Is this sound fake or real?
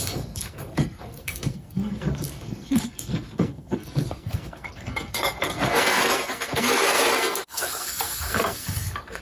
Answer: fake